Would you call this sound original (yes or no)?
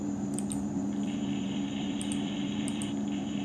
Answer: no